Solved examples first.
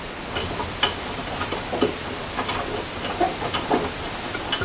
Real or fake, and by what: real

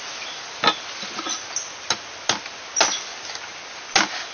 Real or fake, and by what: real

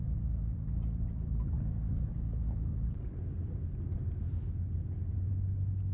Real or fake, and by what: real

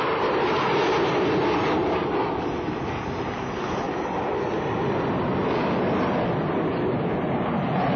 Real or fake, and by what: real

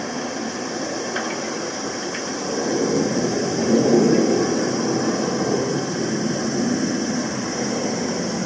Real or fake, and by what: real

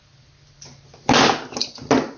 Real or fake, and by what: real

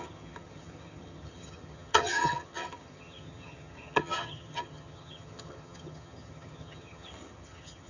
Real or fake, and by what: fake, vocoder, HiFi-GAN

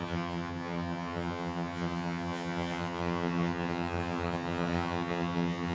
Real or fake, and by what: fake, vocoder, HiFi-GAN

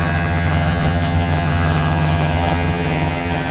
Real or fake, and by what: fake, vocoder, HiFi-GAN